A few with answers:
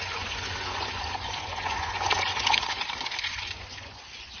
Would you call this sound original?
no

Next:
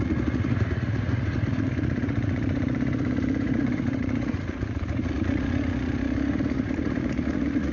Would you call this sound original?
no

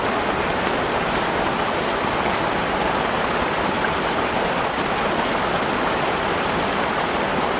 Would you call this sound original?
yes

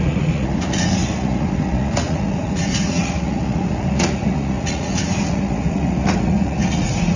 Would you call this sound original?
no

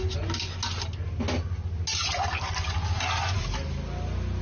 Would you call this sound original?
yes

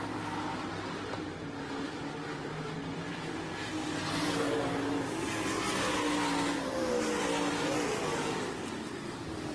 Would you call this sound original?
yes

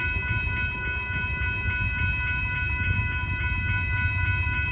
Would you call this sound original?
yes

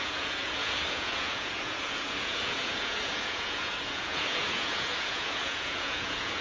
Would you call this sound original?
no